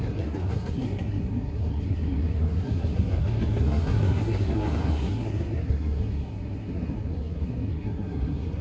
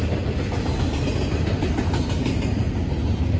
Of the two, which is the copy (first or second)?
first